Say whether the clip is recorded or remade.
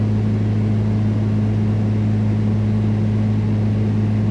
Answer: recorded